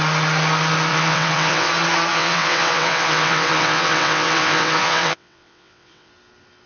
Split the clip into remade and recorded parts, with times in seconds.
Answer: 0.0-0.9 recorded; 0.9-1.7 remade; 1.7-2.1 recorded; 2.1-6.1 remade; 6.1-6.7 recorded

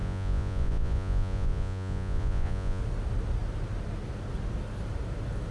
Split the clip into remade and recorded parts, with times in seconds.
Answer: 0.0-2.8 remade; 2.8-5.5 recorded

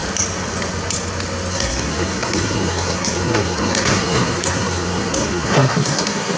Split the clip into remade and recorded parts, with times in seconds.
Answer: 0.0-1.5 recorded; 1.5-6.4 remade

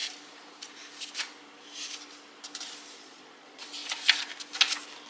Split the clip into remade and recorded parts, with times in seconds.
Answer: 0.0-3.0 recorded; 3.0-3.6 remade; 3.6-5.1 recorded